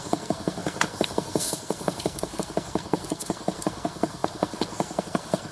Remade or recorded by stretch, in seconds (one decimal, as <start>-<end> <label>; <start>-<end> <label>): 0.0-5.5 remade